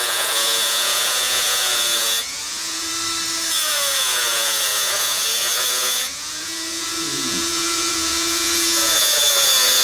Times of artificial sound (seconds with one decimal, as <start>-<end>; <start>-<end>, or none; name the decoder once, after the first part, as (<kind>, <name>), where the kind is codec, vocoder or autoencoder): 0.0-2.9 (vocoder, Vocos); 3.5-9.8